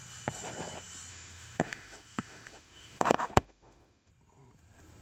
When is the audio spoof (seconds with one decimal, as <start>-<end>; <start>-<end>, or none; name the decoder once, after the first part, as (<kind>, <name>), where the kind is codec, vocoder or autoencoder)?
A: 1.1-4.1 (autoencoder, DAC-VAE)